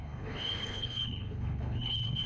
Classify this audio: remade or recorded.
remade